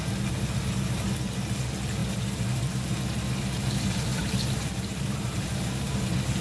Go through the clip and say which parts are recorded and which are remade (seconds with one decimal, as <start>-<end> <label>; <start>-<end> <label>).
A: 0.0-4.1 recorded; 4.1-5.9 remade; 5.9-6.4 recorded